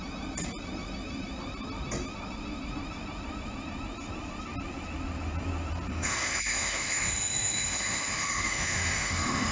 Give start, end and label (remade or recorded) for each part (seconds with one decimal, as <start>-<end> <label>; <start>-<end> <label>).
0.0-5.9 recorded; 5.9-9.5 remade